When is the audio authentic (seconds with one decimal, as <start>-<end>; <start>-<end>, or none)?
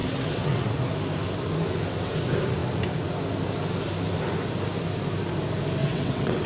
0.8-5.8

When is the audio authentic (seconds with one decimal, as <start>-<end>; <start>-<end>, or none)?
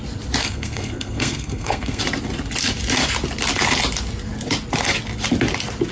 0.0-0.4; 2.0-5.9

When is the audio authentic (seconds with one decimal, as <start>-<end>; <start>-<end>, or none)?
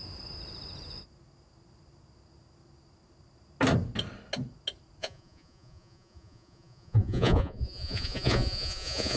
0.0-5.0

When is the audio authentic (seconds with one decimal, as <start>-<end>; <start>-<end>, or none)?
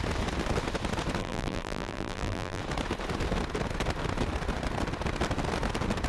0.0-1.2; 2.6-6.1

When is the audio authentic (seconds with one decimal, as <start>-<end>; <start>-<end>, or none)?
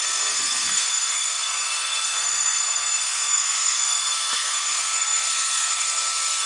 none